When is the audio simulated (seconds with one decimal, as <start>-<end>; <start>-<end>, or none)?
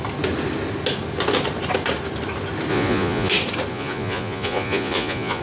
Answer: 2.7-3.3; 3.7-5.4